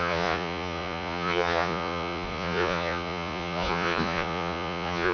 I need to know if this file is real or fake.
fake